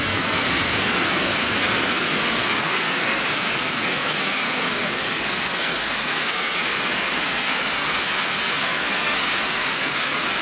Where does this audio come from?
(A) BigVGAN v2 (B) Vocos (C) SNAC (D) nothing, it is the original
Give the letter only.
C